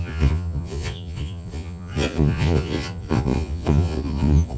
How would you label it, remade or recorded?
remade